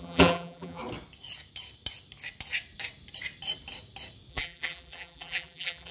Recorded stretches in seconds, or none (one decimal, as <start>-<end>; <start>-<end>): 0.8-4.3